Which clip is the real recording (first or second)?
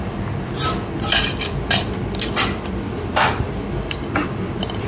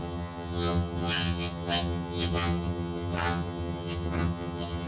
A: first